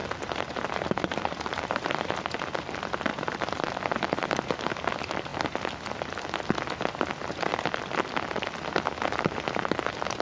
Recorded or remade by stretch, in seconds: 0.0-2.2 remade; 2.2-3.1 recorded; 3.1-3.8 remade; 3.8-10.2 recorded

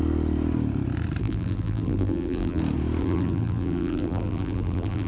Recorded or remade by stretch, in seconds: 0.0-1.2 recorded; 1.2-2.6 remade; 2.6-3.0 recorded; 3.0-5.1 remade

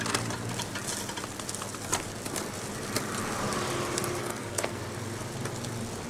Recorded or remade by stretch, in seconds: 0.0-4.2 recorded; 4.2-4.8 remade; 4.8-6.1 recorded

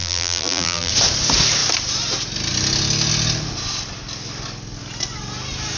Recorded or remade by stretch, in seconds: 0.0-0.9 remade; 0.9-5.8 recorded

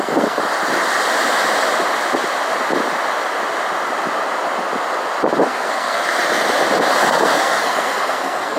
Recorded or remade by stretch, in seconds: 0.0-0.4 remade; 0.4-5.4 recorded; 5.4-6.0 remade; 6.0-7.0 recorded; 7.0-8.6 remade